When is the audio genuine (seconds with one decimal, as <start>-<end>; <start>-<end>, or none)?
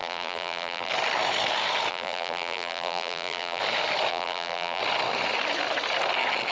0.9-1.9; 3.6-4.1; 4.8-6.5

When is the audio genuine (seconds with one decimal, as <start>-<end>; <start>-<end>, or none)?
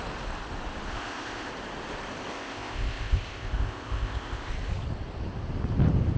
0.0-0.9; 1.5-2.3; 4.5-6.2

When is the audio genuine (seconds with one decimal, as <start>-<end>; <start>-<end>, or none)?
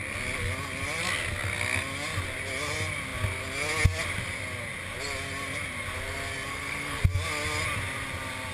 0.0-6.5; 7.0-8.5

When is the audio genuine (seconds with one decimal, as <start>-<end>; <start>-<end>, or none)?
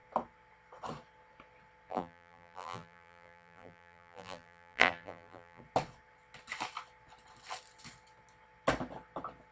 0.0-1.9; 5.6-9.5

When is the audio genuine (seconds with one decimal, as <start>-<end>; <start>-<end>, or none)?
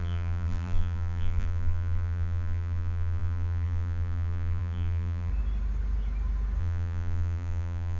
5.3-6.6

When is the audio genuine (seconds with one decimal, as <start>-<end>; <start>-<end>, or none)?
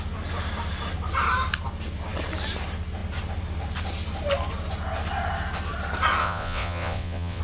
0.0-6.2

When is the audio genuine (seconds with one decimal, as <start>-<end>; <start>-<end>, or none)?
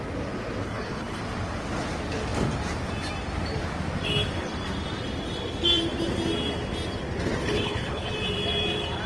0.0-0.6; 1.2-7.4; 8.1-9.1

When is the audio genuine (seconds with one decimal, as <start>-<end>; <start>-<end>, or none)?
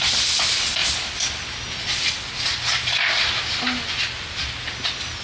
0.0-5.2